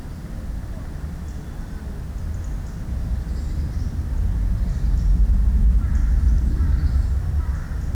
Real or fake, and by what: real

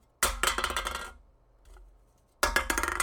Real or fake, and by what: real